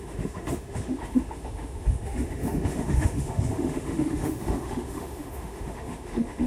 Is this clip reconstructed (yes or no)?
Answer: yes